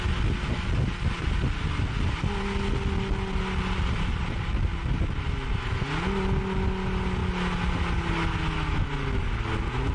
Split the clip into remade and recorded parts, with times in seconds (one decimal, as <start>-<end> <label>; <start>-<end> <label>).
0.0-9.9 recorded